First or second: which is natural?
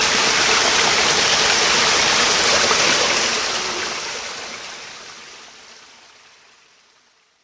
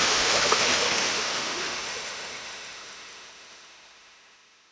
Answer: first